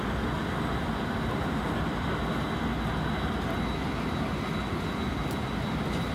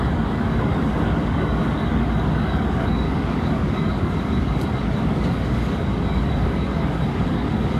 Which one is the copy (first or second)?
second